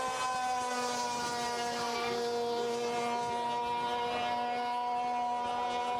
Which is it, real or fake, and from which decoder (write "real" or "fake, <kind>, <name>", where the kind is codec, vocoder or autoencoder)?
real